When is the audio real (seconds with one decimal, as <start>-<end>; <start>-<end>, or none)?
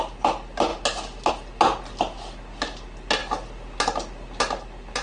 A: 0.0-5.0